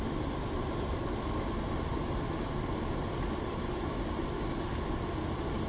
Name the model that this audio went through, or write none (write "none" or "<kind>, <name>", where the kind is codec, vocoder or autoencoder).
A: none